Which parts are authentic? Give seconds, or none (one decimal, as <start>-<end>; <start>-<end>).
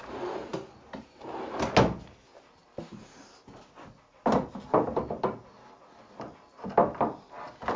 0.0-7.8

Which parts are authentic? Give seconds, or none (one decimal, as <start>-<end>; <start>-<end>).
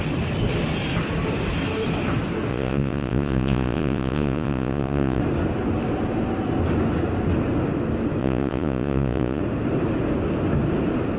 0.0-2.5; 5.2-8.2; 9.4-11.2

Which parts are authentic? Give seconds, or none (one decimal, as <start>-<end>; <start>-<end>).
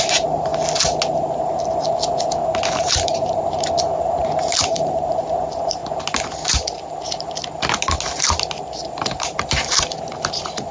0.5-2.7; 5.8-9.2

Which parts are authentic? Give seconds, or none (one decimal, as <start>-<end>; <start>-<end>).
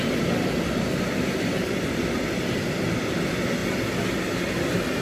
0.0-5.0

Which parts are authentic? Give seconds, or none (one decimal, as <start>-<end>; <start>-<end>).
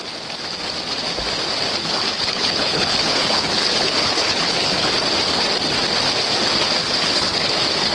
0.0-1.8; 4.9-6.8; 7.5-7.9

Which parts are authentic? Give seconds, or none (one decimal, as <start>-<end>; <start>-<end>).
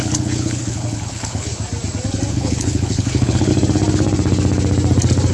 1.5-2.3; 3.5-5.3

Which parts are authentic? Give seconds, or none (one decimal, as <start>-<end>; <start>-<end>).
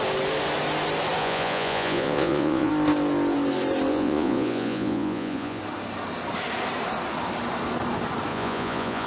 0.0-1.2; 2.7-3.9; 5.6-8.3